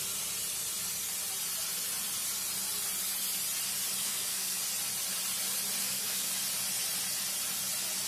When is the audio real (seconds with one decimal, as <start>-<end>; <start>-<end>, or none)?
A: 0.0-4.0; 4.6-5.8; 6.3-8.1